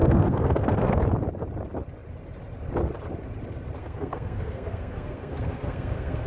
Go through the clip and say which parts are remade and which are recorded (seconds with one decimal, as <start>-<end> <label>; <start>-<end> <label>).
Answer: 0.0-1.0 remade; 1.0-3.8 recorded; 3.8-6.3 remade